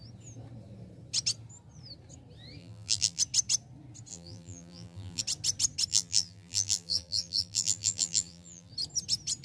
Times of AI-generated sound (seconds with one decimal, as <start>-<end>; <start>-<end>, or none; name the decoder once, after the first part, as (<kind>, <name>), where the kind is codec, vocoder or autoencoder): 2.6-3.2 (vocoder, BigVGAN v2); 4.1-5.2; 5.9-8.7